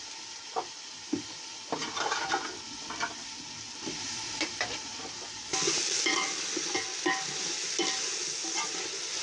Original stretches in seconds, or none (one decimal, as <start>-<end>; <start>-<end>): 0.0-1.8; 5.2-9.2